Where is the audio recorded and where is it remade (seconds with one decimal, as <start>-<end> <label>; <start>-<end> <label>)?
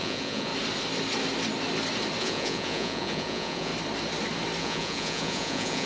0.0-0.5 remade; 0.5-2.2 recorded; 2.2-3.7 remade; 3.7-4.6 recorded; 4.6-5.9 remade